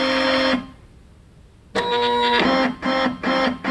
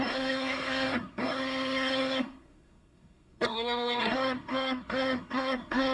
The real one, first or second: first